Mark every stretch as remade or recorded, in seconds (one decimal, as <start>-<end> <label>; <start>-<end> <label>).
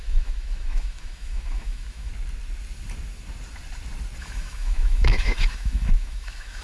0.0-2.1 remade; 2.1-4.2 recorded; 4.2-6.6 remade